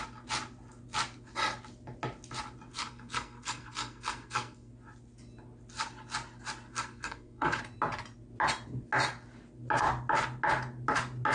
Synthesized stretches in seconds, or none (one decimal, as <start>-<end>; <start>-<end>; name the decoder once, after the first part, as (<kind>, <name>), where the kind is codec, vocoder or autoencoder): 2.7-4.7 (codec, SNAC); 6.7-7.6